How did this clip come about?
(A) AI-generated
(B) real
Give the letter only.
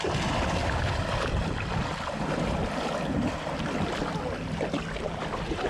B